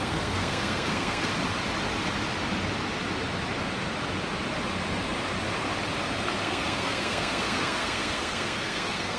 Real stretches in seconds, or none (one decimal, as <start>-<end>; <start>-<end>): 1.3-6.4

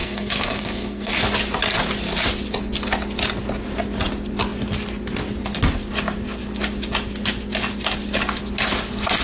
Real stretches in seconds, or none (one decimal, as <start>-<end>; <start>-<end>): 1.1-9.2

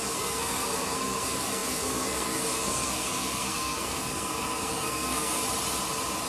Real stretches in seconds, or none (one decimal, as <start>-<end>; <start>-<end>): 5.4-6.3

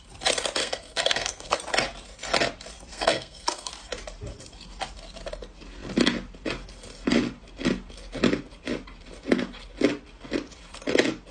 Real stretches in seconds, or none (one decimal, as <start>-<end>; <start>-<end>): 0.0-0.6; 1.6-2.9; 3.7-11.3

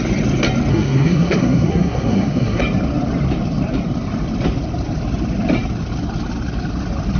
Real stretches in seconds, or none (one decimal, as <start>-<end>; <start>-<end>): 0.0-0.7; 2.6-7.2

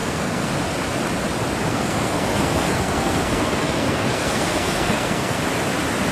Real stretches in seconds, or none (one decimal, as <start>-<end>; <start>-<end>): 0.5-1.7; 5.4-6.1

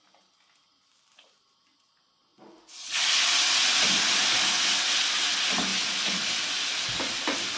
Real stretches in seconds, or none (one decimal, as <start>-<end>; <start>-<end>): 0.0-7.6